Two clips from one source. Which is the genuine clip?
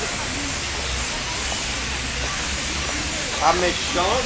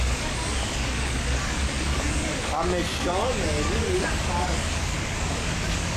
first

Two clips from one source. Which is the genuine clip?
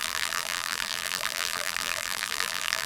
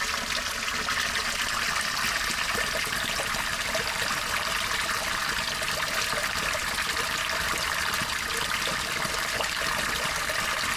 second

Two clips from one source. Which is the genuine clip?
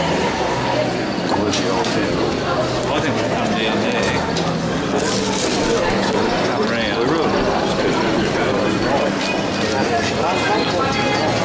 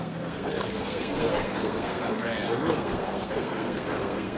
first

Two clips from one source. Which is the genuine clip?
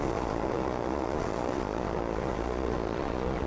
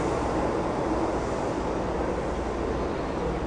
second